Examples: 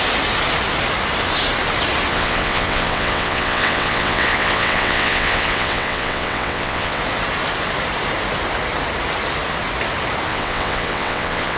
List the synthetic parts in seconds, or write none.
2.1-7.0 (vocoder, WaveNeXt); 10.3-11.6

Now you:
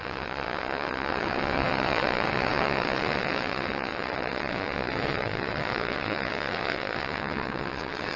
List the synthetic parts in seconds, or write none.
0.0-8.2 (vocoder, WaveNeXt)

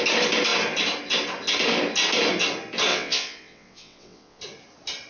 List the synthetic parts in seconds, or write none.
2.9-4.4 (vocoder, WaveNeXt)